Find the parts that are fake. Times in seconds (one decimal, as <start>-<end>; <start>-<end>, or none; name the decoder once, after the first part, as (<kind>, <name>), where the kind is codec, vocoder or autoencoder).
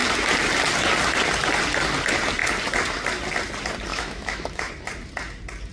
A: 3.9-4.7 (autoencoder, DAC-VAE)